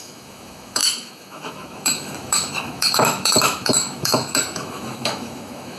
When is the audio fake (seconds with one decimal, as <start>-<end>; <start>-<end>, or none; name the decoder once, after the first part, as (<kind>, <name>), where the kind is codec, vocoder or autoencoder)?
0.0-5.8 (autoencoder, DAC-VAE)